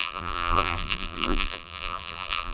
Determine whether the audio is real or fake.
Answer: fake